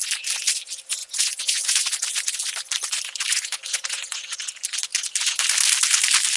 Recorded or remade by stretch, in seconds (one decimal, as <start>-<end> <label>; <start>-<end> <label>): 0.0-1.0 recorded; 1.0-1.8 remade; 1.8-3.3 recorded; 3.3-4.4 remade; 4.4-6.4 recorded